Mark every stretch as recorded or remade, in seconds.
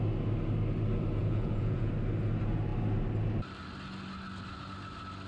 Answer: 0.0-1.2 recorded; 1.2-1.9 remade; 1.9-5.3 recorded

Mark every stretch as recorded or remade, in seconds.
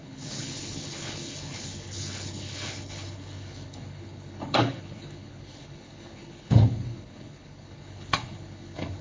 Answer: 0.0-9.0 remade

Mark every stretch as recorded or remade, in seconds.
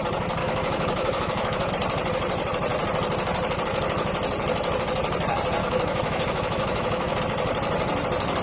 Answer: 0.0-0.4 recorded; 0.4-1.7 remade; 1.7-5.6 recorded; 5.6-7.2 remade; 7.2-8.4 recorded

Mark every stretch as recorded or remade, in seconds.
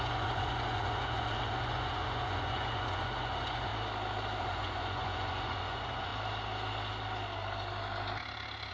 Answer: 0.0-3.7 remade; 3.7-4.4 recorded; 4.4-6.1 remade; 6.1-8.7 recorded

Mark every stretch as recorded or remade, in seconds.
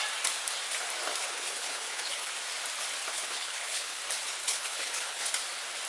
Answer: 0.0-1.2 recorded; 1.2-2.3 remade; 2.3-3.1 recorded; 3.1-4.0 remade; 4.0-4.4 recorded; 4.4-5.3 remade; 5.3-5.9 recorded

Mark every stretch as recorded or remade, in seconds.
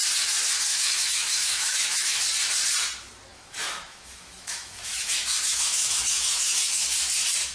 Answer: 0.0-0.7 recorded; 0.7-2.2 remade; 2.2-3.3 recorded; 3.3-6.8 remade; 6.8-7.5 recorded